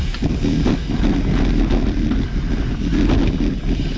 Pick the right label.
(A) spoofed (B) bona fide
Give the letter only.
B